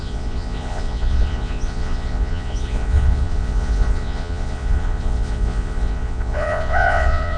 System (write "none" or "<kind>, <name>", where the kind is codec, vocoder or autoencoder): vocoder, Vocos